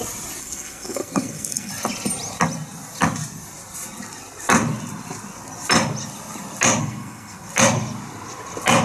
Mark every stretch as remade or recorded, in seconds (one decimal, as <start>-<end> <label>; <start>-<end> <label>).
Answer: 0.0-0.4 recorded; 0.4-1.7 remade; 1.7-6.8 recorded; 6.8-7.5 remade; 7.5-8.8 recorded